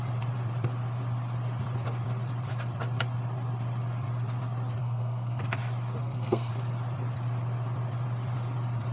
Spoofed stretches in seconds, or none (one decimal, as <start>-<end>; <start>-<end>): 4.8-5.4; 6.0-6.5